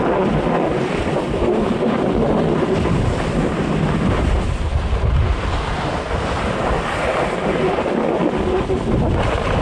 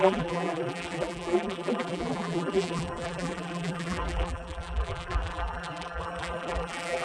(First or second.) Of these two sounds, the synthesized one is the second